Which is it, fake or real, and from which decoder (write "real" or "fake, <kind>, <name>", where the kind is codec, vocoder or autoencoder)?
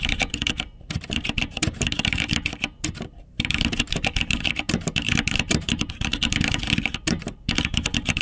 fake, vocoder, BigVGAN v2